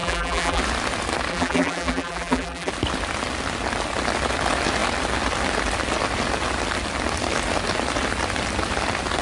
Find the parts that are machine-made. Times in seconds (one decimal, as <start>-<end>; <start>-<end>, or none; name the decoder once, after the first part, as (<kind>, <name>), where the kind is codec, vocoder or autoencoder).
0.0-0.6 (vocoder, BigVGAN v2); 1.3-2.7